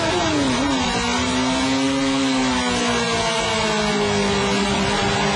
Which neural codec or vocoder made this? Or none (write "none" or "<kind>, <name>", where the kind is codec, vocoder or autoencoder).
none